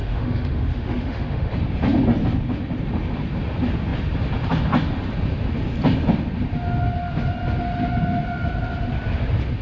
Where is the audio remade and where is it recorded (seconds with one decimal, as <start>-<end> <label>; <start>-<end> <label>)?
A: 0.0-1.5 remade; 1.5-9.6 recorded